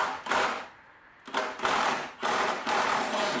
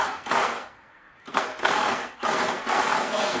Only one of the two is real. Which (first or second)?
first